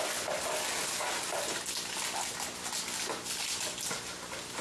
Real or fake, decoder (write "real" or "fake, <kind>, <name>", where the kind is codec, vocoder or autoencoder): real